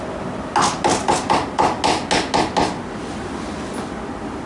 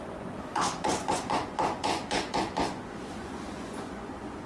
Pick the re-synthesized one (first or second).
second